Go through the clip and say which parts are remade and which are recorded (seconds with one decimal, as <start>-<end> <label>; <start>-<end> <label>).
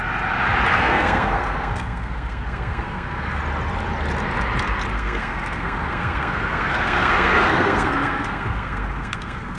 0.0-0.7 recorded; 0.7-3.4 remade; 3.4-4.9 recorded; 4.9-9.6 remade